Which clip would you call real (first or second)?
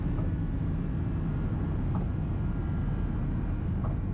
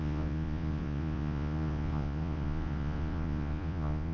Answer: first